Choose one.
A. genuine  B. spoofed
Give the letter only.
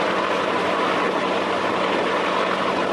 A